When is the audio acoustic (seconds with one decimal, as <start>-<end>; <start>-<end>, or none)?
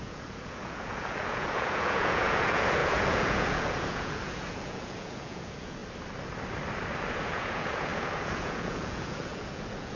5.8-7.1